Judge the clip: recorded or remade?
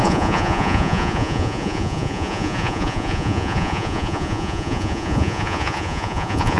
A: remade